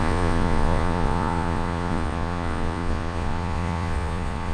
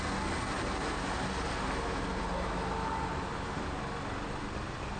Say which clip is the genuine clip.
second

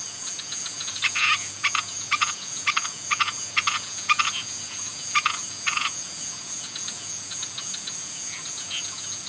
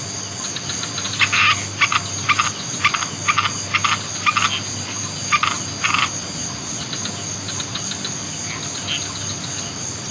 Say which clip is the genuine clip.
second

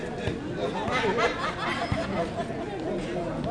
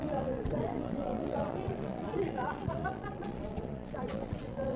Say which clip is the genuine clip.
first